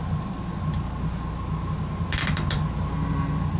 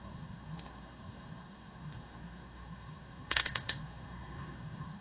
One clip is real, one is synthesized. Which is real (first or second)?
first